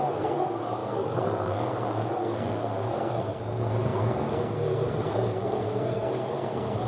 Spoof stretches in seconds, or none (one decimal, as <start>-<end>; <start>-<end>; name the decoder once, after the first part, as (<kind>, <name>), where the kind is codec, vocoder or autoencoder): 0.0-6.9 (codec, SNAC)